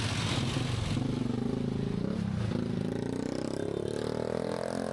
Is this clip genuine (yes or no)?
yes